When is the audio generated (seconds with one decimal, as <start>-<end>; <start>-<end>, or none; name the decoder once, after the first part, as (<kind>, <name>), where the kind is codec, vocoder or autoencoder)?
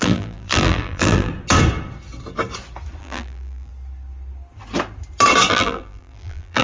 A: 0.0-1.3 (vocoder, BigVGAN v2); 3.0-3.7; 5.5-6.6